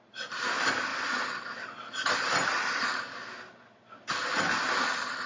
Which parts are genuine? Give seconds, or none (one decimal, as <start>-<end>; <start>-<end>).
0.0-5.3